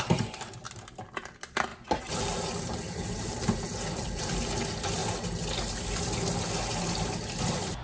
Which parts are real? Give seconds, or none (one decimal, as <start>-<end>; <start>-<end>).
0.0-1.7; 4.5-7.8